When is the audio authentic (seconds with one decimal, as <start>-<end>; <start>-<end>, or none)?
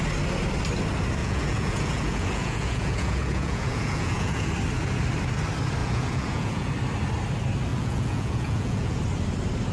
0.0-1.2; 4.5-5.8; 6.7-7.7; 9.0-9.7